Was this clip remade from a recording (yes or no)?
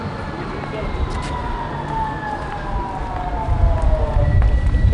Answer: no